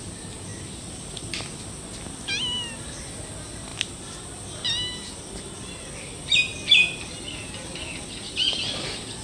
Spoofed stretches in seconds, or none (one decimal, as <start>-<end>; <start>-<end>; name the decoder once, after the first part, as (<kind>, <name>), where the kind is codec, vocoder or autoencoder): 0.5-1.4 (vocoder, BigVGAN v2)